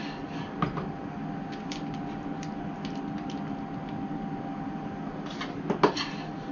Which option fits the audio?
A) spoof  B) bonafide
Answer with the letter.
B